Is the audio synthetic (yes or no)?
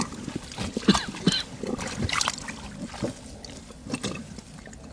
no